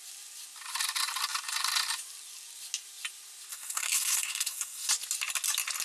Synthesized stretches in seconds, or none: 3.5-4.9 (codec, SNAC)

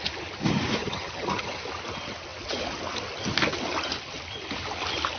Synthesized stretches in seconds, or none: 0.8-1.6 (vocoder, HiFi-GAN)

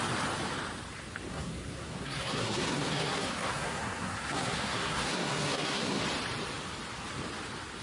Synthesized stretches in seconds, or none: 1.3-6.0 (codec, SNAC)